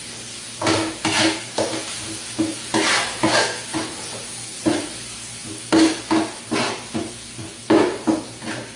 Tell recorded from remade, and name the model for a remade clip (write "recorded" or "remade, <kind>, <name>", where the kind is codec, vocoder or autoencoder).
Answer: recorded